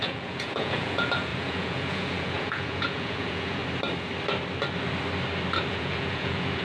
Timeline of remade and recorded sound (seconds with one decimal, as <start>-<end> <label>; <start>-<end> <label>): 0.0-3.6 remade; 3.6-5.7 recorded; 5.7-6.6 remade